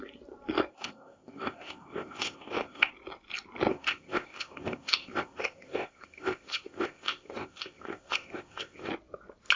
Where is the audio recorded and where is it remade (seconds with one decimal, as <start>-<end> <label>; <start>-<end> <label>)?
0.0-0.7 recorded; 0.7-2.9 remade; 2.9-3.7 recorded; 3.7-8.9 remade; 8.9-9.6 recorded